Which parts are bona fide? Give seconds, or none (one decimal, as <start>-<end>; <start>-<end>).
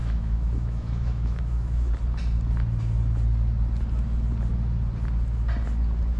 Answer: 1.9-6.2